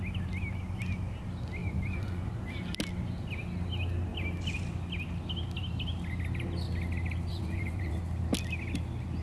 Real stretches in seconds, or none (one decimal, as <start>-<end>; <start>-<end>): 0.0-1.6; 2.3-7.3; 8.0-9.2